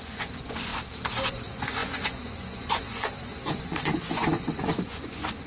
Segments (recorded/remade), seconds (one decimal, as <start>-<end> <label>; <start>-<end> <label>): 0.0-0.7 remade; 0.7-1.3 recorded; 1.3-5.5 remade